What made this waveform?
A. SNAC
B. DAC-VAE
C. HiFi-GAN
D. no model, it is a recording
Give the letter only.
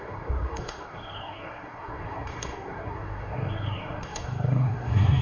A